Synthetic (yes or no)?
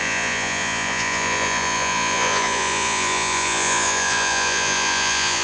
yes